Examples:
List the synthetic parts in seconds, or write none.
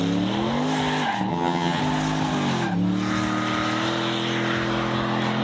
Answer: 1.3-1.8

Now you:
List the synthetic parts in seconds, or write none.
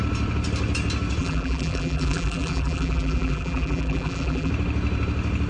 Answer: 1.2-4.5